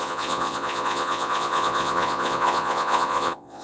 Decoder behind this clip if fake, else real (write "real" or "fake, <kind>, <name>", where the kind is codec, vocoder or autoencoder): fake, vocoder, Vocos